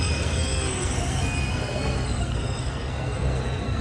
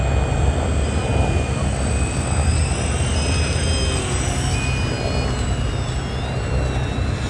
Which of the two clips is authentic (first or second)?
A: second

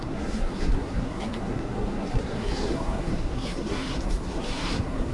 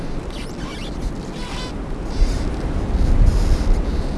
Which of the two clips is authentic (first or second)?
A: second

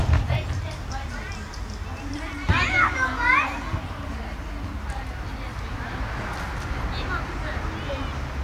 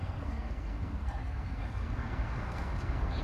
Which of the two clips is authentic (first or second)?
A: first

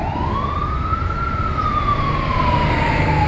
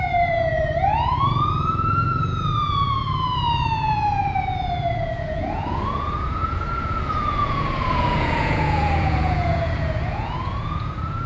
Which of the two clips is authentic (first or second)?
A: first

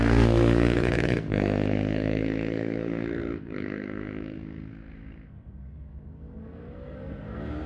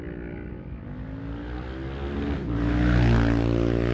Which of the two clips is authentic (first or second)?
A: second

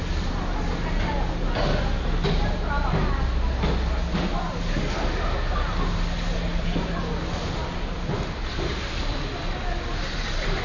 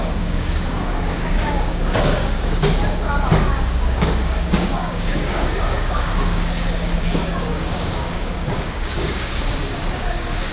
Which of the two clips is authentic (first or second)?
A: first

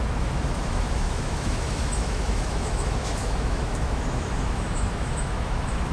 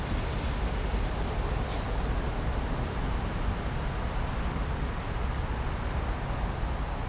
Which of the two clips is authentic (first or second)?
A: second